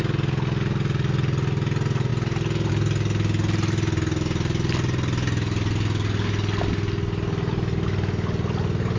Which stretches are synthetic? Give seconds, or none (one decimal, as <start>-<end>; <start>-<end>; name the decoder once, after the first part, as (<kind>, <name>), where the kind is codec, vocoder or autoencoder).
none

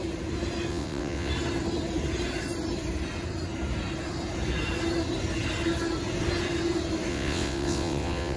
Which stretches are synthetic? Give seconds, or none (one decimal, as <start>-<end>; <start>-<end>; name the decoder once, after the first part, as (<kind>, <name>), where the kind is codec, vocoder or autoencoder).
0.7-1.3 (vocoder, WaveNeXt); 7.1-8.4